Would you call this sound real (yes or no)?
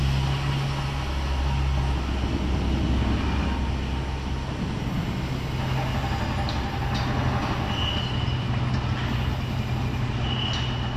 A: yes